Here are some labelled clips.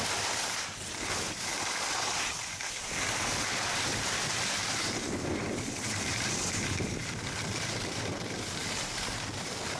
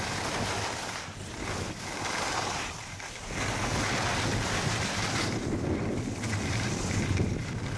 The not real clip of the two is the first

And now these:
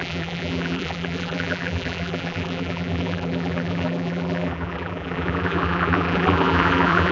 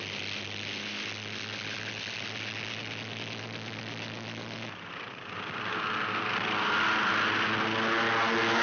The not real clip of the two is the first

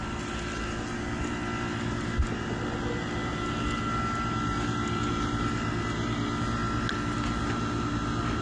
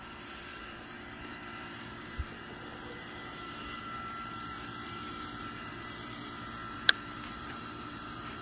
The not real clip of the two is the second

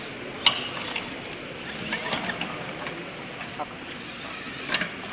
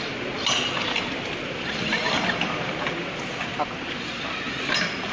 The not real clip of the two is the second